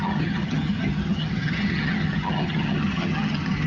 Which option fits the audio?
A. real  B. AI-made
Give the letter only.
B